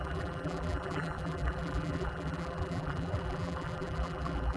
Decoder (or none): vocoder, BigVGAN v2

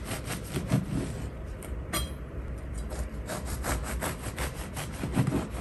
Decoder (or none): vocoder, BigVGAN v2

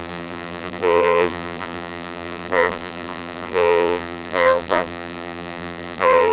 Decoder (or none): vocoder, BigVGAN v2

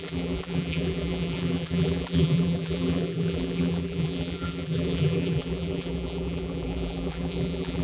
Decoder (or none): vocoder, BigVGAN v2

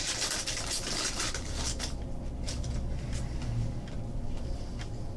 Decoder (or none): none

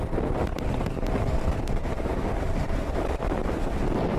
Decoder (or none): vocoder, BigVGAN v2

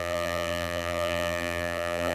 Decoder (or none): vocoder, BigVGAN v2